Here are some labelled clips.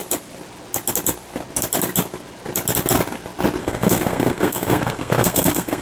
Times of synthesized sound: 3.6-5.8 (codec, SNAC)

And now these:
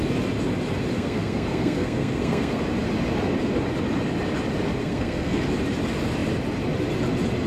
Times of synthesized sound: 0.9-2.6 (codec, SNAC); 4.8-5.4

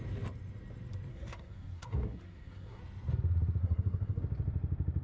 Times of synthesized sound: 1.1-2.8 (codec, SNAC); 3.6-4.2

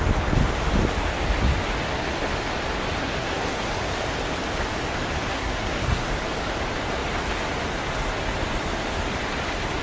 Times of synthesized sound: 3.0-3.7 (codec, SNAC); 5.3-6.1

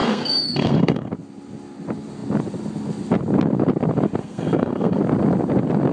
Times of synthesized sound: 0.0-1.1 (codec, SNAC); 4.2-5.0

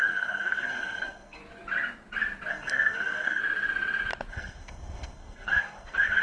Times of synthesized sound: 0.0-1.4 (codec, SNAC); 2.5-3.4; 4.3-6.2